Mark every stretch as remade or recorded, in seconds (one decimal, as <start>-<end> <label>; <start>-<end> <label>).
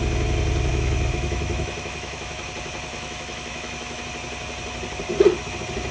0.0-0.7 recorded; 0.7-2.5 remade; 2.5-2.9 recorded; 2.9-4.0 remade; 4.0-5.9 recorded